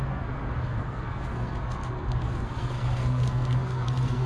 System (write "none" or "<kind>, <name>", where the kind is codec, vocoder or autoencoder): codec, SNAC